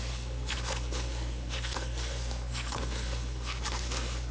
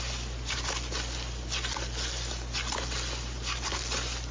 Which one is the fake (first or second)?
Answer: first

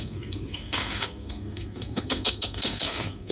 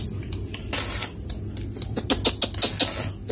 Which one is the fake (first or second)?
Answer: first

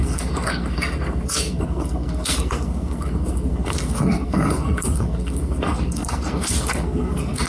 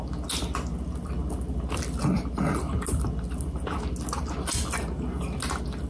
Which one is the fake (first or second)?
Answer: first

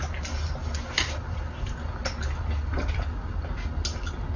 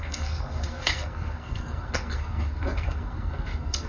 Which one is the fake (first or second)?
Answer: second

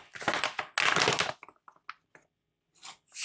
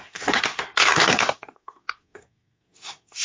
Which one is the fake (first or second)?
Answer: second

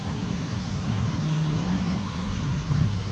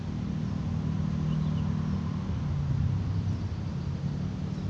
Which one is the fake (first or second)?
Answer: first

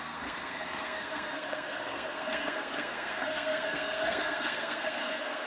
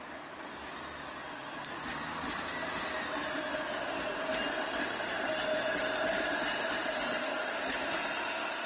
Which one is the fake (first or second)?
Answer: first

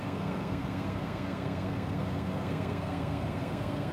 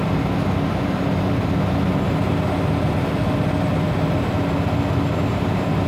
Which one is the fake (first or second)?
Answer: first